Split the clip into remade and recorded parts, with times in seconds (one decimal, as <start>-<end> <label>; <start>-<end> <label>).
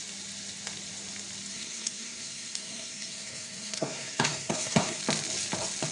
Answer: 0.0-1.5 recorded; 1.5-5.0 remade; 5.0-5.9 recorded